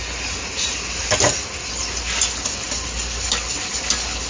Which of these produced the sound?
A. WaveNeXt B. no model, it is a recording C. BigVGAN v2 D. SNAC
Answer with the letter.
B